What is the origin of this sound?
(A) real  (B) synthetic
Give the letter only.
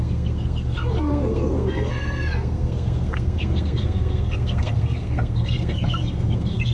B